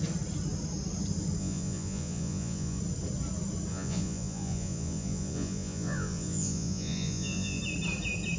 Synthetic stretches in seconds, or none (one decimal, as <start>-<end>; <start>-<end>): 1.4-2.8; 3.7-7.6